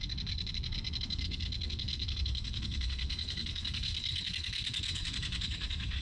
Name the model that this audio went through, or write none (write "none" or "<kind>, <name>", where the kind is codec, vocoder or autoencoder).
codec, SNAC